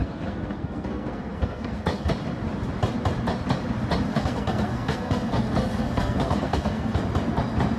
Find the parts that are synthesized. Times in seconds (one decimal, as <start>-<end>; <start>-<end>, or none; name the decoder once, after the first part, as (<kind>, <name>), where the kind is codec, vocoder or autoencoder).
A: 0.0-2.1 (codec, SNAC); 4.1-7.0